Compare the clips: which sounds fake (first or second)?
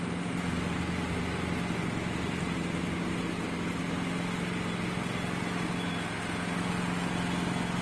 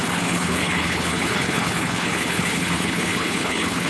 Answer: second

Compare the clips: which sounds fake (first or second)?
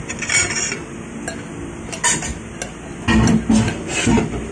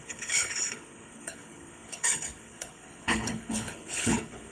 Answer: second